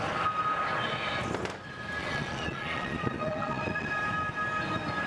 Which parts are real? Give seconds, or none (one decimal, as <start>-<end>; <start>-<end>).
0.0-2.0; 3.9-5.1